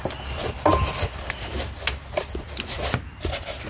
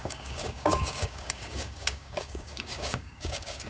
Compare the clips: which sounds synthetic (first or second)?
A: second